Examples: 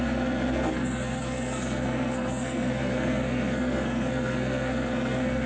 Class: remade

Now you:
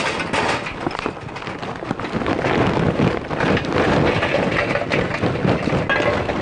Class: recorded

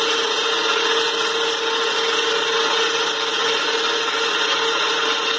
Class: recorded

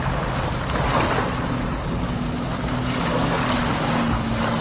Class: recorded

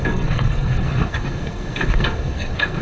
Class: remade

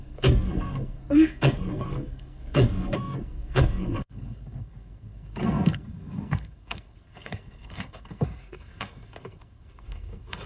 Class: remade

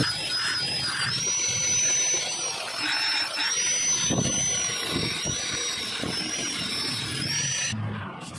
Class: recorded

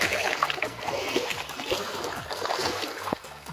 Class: remade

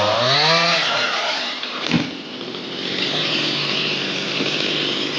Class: recorded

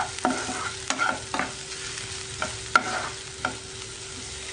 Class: recorded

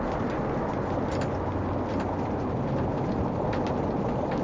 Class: recorded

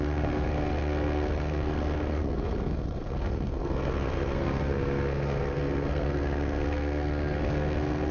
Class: remade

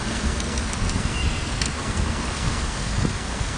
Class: remade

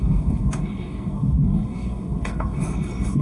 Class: remade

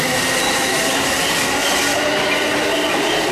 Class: recorded